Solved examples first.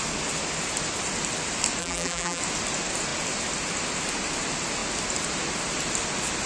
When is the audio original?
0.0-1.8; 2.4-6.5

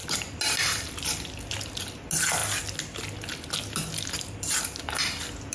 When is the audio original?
0.0-5.5